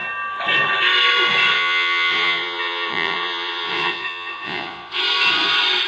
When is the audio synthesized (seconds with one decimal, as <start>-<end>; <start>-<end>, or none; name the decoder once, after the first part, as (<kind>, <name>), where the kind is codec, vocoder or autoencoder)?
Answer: 1.5-5.0 (vocoder, Vocos)